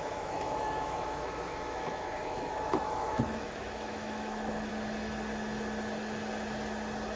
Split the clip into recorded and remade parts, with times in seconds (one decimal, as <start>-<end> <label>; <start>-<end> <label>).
0.0-4.7 remade; 4.7-7.2 recorded